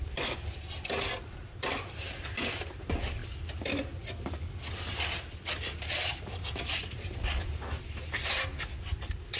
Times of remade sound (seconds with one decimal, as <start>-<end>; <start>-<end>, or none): none